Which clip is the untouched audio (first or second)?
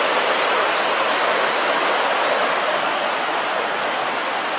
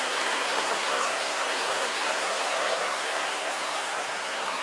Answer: first